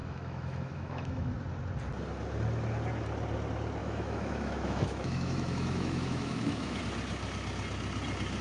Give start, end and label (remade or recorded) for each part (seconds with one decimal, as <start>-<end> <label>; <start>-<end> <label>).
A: 0.0-1.3 remade; 1.3-3.8 recorded; 3.8-6.8 remade; 6.8-8.4 recorded